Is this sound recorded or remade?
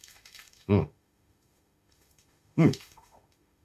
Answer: remade